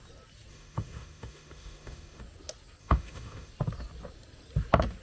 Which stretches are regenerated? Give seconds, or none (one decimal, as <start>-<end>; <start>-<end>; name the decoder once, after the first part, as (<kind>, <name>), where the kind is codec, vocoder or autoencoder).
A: 0.5-2.2 (autoencoder, DAC-VAE); 2.8-3.5